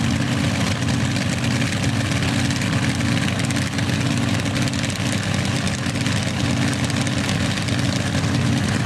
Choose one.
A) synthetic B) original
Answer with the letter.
B